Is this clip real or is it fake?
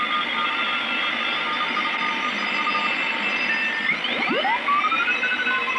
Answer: real